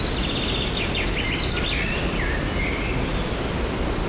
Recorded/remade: recorded